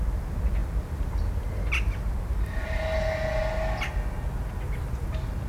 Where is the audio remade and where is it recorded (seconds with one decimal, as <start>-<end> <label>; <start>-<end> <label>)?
0.0-5.5 recorded